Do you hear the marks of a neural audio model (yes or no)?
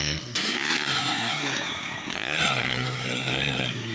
yes